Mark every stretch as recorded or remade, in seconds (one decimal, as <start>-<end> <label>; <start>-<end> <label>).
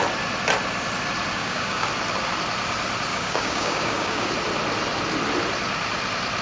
0.0-1.4 recorded; 1.4-1.9 remade; 1.9-3.1 recorded; 3.1-4.3 remade; 4.3-6.4 recorded